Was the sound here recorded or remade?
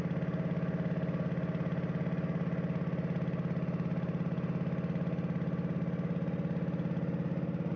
recorded